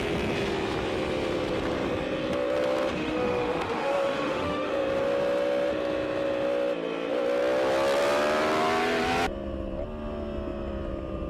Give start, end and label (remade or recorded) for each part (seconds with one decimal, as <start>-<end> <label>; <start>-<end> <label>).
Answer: 0.0-3.0 recorded; 3.0-4.7 remade; 4.7-11.3 recorded